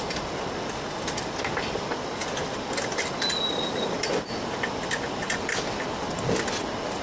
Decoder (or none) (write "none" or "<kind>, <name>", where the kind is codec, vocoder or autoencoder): none